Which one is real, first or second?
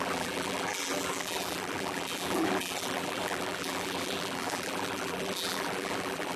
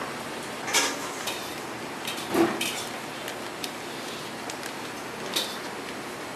second